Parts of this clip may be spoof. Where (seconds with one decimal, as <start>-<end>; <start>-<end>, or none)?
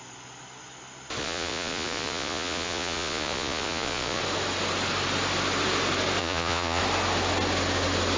1.2-4.2; 6.2-6.8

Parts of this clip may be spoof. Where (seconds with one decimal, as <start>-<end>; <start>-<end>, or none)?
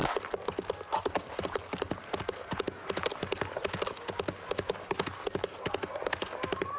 none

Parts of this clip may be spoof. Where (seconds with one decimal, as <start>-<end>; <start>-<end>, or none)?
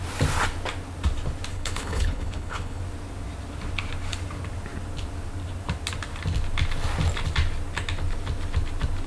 1.5-2.8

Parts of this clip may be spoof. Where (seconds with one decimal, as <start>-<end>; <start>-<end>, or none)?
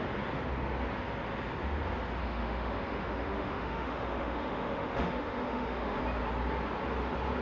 2.2-6.0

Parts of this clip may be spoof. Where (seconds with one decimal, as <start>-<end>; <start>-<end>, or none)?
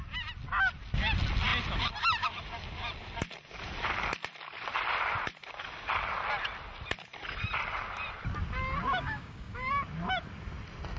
8.9-9.7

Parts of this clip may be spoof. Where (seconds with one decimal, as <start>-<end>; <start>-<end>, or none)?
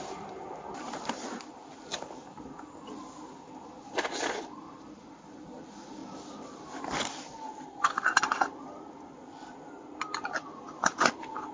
none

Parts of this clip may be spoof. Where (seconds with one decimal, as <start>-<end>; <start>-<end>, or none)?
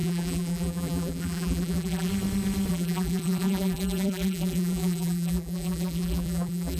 0.0-2.1; 2.7-6.8